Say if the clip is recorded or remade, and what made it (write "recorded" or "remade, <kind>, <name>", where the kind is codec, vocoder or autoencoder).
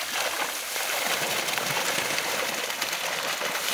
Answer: recorded